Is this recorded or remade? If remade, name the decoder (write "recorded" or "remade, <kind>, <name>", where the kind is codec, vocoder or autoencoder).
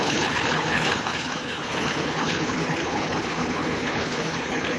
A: remade, codec, HILCodec